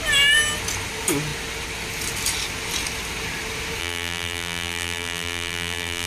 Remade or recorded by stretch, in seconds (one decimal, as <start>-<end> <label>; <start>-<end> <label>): 0.0-3.8 recorded; 3.8-6.1 remade